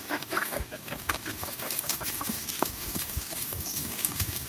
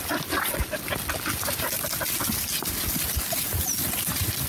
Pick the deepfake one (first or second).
first